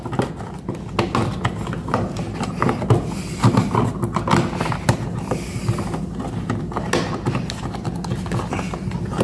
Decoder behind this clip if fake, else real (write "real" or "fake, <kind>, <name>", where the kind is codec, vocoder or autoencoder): real